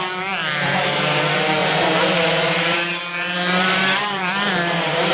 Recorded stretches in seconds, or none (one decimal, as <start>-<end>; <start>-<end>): 0.0-0.4; 1.2-1.6